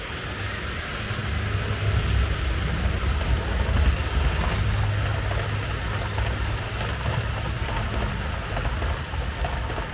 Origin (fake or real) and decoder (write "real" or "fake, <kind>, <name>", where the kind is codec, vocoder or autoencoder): real